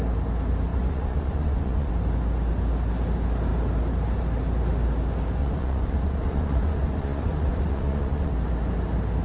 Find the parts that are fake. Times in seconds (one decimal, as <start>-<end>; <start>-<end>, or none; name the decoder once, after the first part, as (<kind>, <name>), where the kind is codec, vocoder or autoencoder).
0.7-1.9 (vocoder, Vocos); 5.4-8.3